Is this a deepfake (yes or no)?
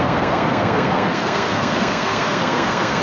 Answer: yes